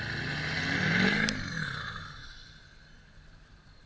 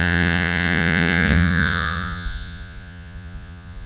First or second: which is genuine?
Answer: first